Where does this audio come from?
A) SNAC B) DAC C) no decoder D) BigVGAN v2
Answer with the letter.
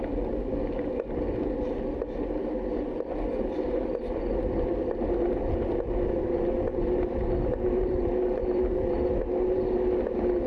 C